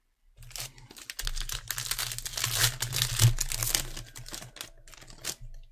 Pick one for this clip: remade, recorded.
recorded